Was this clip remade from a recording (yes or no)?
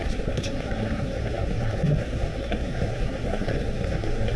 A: yes